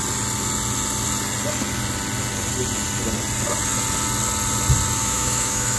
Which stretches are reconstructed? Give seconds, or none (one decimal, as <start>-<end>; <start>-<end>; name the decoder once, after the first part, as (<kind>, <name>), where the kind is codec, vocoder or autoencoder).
5.0-5.8 (autoencoder, DAC-VAE)